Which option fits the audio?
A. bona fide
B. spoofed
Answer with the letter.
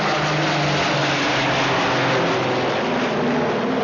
A